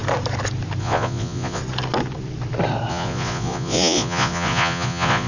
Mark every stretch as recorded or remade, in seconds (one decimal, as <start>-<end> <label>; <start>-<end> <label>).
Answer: 0.0-0.8 recorded; 0.8-1.6 remade; 1.6-2.9 recorded; 2.9-5.3 remade

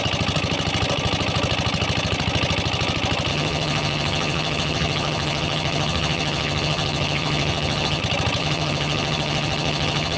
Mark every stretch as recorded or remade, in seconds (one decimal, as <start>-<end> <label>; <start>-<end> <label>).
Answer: 0.0-3.3 recorded; 3.3-8.0 remade; 8.0-8.4 recorded; 8.4-10.2 remade

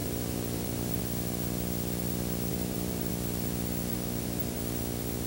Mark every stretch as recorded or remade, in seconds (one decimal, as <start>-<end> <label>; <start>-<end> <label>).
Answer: 0.0-1.0 remade; 1.0-2.5 recorded; 2.5-3.1 remade; 3.1-3.9 recorded; 3.9-4.6 remade; 4.6-5.3 recorded

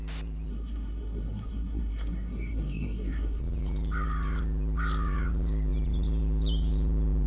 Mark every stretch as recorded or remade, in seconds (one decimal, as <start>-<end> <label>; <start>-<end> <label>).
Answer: 0.0-0.5 recorded; 0.5-3.4 remade; 3.4-7.3 recorded

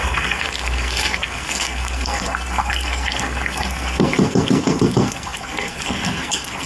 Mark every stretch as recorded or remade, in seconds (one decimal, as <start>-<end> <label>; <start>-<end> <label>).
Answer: 0.0-6.7 remade

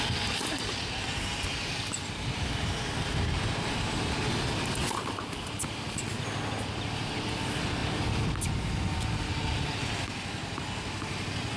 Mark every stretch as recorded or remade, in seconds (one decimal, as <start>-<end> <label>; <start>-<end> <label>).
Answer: 0.0-11.6 recorded

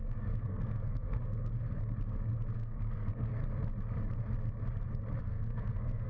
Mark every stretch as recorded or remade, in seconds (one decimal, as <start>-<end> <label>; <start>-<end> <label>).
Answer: 0.0-1.5 remade; 1.5-2.5 recorded; 2.5-3.3 remade; 3.3-5.2 recorded; 5.2-6.1 remade

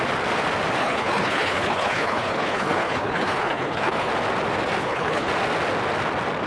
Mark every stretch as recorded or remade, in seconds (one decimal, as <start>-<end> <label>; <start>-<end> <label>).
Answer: 0.0-0.8 recorded; 0.8-4.1 remade; 4.1-4.8 recorded; 4.8-5.3 remade; 5.3-6.5 recorded